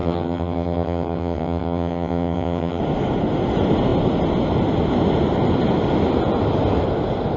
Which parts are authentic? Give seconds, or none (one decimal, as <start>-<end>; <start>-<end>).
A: 2.8-7.4